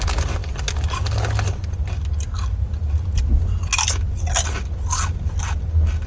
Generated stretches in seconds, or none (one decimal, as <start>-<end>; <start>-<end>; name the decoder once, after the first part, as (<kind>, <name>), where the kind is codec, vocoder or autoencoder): none